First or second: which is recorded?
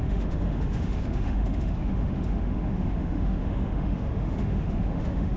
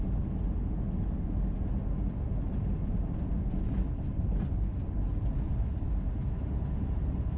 second